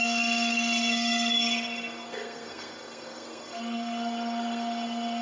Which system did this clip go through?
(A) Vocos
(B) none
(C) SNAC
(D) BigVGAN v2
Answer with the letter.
C